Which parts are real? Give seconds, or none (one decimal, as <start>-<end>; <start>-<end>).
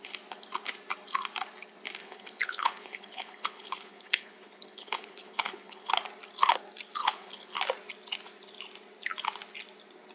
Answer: 0.0-2.0; 5.9-7.0; 7.6-10.1